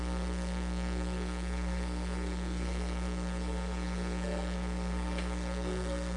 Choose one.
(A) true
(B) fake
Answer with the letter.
B